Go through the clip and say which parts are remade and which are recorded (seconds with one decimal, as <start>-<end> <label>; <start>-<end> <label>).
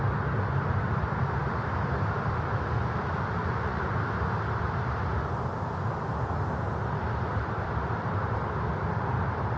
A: 0.0-3.4 recorded; 3.4-4.0 remade; 4.0-9.6 recorded